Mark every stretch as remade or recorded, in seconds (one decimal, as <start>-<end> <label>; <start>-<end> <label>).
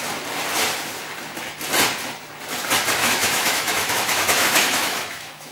0.0-3.0 recorded; 3.0-5.5 remade